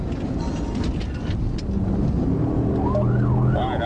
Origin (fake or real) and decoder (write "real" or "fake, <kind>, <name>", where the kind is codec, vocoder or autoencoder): real